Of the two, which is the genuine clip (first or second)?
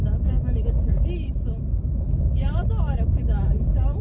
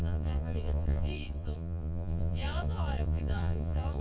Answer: first